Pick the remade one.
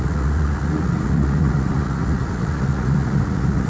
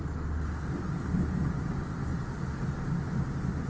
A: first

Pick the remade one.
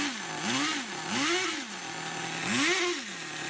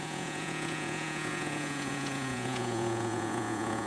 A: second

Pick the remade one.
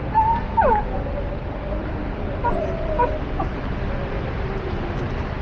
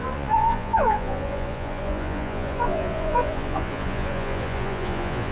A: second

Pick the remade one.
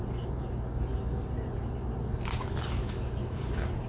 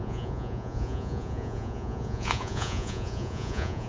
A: second